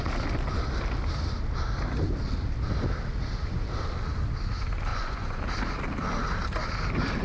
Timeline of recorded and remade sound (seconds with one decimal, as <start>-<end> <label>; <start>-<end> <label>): 0.0-4.9 recorded; 4.9-5.4 remade; 5.4-7.2 recorded